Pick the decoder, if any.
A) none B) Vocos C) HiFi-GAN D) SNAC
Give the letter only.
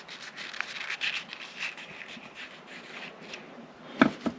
A